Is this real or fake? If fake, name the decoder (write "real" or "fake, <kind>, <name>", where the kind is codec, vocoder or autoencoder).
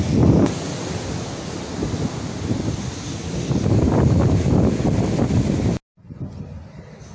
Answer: real